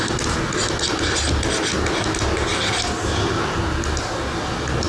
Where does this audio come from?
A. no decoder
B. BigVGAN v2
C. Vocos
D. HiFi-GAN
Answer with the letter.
A